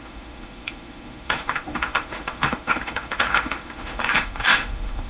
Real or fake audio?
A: fake